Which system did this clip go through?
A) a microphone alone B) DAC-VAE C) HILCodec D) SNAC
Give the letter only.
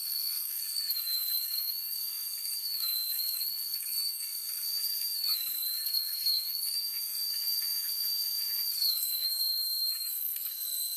D